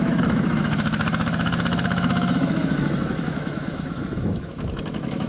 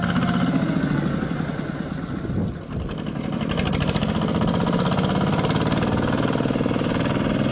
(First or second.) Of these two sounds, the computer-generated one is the first